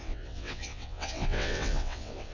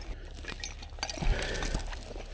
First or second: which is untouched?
second